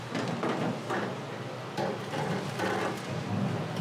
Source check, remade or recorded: recorded